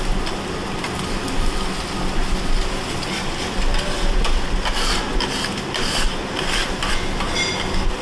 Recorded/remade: recorded